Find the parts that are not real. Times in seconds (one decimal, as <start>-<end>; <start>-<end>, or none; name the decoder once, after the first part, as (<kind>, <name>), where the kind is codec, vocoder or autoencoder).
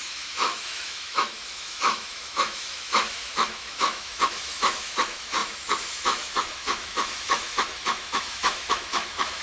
0.0-9.4 (autoencoder, DAC-VAE)